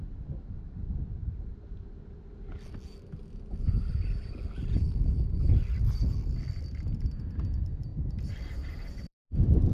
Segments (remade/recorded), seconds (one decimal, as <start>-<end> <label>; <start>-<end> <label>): 0.0-7.9 recorded; 7.9-9.2 remade; 9.2-9.7 recorded